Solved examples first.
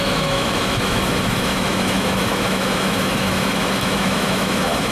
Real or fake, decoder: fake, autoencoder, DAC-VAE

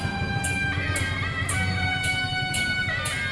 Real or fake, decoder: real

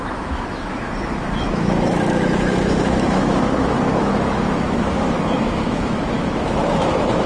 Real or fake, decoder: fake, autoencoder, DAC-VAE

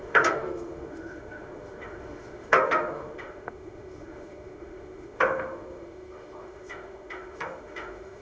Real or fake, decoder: fake, autoencoder, DAC-VAE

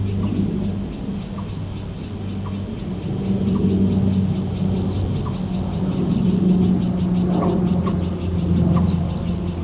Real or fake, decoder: real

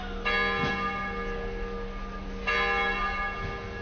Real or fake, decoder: real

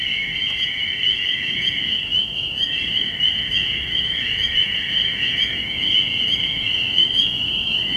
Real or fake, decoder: fake, autoencoder, DAC-VAE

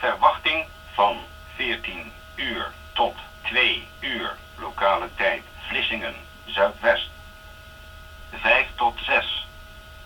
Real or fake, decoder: real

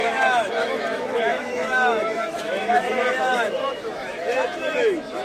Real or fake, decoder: fake, autoencoder, DAC-VAE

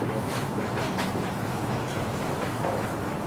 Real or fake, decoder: fake, autoencoder, DAC-VAE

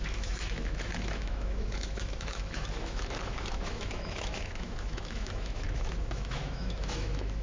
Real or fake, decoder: fake, autoencoder, DAC-VAE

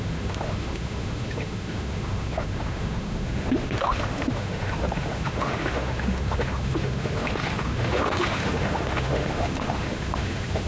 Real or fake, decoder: fake, autoencoder, DAC-VAE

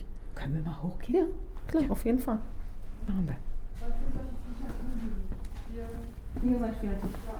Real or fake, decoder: real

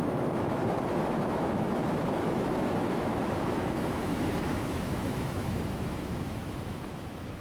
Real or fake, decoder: fake, autoencoder, DAC-VAE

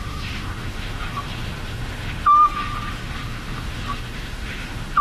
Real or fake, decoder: fake, autoencoder, DAC-VAE